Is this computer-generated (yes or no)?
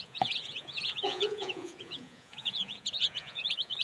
yes